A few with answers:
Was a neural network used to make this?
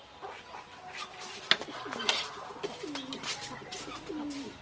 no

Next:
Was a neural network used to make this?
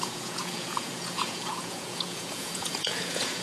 yes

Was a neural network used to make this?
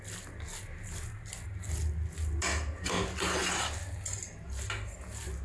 no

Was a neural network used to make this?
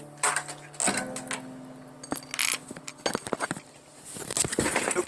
no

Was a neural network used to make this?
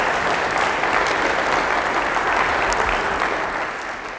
no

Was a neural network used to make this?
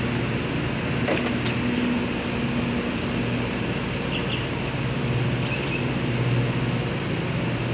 no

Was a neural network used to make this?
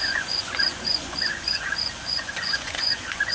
yes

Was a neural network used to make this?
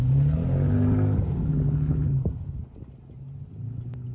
no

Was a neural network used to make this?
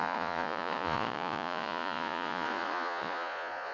yes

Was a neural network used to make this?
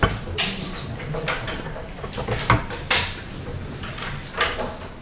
no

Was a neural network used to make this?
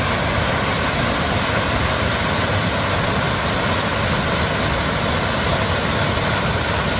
no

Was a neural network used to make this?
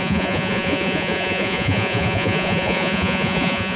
yes